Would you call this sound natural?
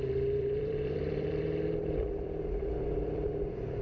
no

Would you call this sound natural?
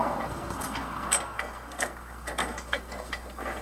no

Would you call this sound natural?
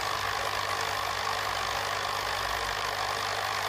yes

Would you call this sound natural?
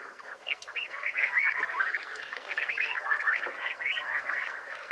no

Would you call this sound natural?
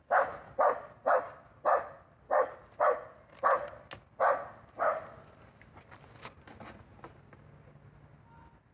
yes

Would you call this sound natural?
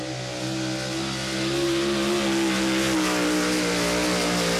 yes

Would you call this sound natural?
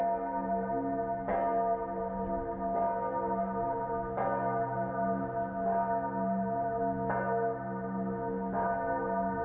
yes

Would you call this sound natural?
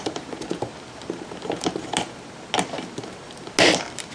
yes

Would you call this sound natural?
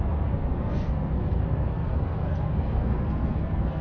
no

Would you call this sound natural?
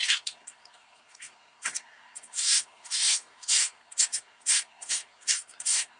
no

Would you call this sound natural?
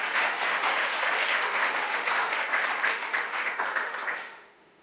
no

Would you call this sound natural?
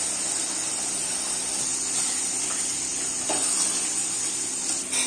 yes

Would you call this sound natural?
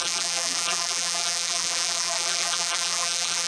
no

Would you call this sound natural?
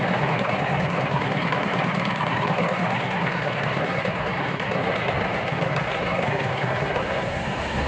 no